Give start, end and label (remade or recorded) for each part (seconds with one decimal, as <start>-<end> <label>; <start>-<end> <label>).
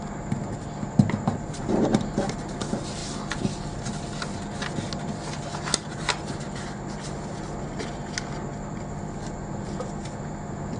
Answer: 0.0-10.8 recorded